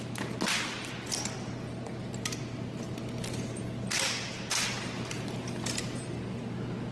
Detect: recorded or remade recorded